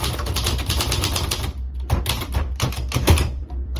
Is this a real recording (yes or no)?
no